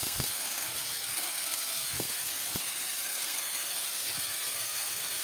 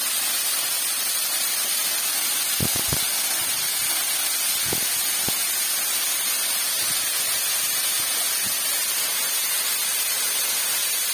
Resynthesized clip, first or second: first